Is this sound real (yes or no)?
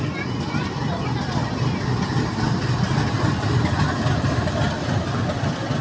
yes